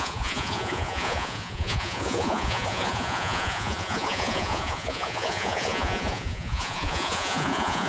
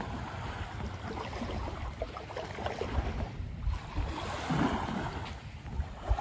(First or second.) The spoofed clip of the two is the first